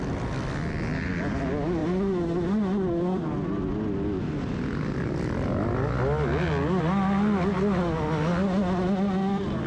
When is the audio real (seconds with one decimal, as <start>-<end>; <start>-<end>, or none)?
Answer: 0.0-9.7